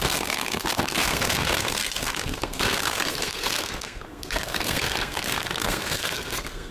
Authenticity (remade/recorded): remade